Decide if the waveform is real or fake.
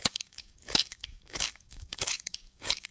fake